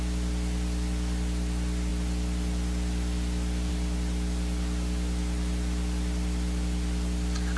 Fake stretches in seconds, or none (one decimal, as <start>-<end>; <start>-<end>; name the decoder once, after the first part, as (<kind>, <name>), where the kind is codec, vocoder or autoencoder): none